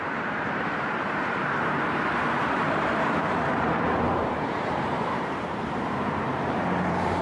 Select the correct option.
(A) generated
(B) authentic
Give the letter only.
A